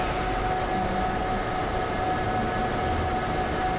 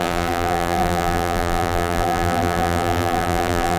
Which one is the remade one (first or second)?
second